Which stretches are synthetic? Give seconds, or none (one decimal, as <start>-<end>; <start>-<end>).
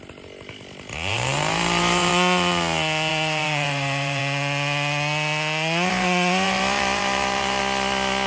1.1-2.1; 3.1-4.2; 5.9-7.6